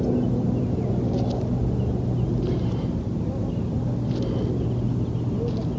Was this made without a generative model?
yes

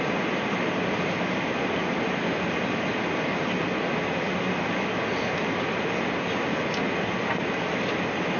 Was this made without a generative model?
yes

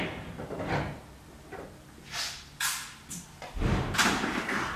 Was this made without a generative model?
yes